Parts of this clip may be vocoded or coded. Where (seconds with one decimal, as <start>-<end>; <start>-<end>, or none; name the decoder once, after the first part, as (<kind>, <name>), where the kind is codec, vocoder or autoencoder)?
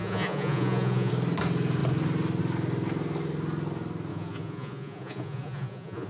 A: 0.0-1.1 (vocoder, Vocos); 4.1-6.1